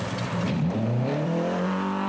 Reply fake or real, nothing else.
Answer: fake